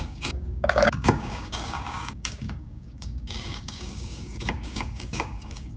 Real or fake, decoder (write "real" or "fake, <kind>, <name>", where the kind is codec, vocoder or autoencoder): fake, codec, DAC